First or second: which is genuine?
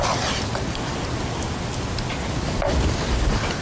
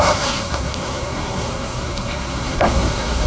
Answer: first